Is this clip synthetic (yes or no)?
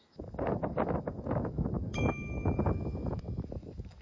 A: yes